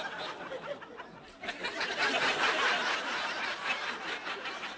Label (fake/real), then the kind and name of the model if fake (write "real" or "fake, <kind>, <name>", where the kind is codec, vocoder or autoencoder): real